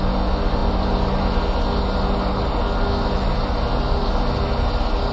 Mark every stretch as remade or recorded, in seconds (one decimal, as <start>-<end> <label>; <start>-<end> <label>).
0.0-5.1 recorded